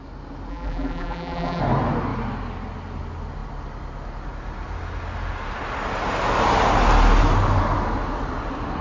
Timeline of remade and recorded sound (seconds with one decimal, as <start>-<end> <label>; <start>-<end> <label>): 0.0-0.5 recorded; 0.5-1.6 remade; 1.6-8.8 recorded